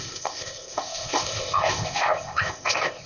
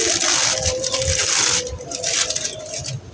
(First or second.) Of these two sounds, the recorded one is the second